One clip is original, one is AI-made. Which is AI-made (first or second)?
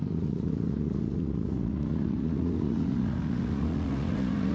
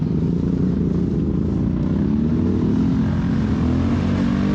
first